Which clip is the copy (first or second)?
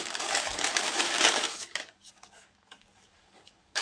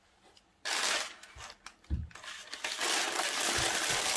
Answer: first